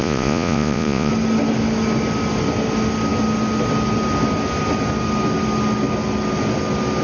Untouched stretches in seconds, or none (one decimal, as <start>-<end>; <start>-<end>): 1.1-7.0